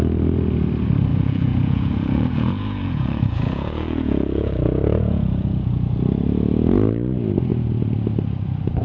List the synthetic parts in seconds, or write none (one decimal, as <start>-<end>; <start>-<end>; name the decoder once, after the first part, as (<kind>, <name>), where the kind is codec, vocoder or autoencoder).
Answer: 1.1-5.9 (vocoder, Vocos)